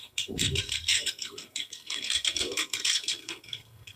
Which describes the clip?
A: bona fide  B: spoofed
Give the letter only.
B